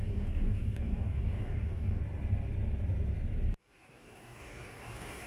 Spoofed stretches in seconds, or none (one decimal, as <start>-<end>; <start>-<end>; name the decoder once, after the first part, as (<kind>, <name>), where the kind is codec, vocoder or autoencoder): 0.0-2.0 (codec, DAC); 3.6-5.3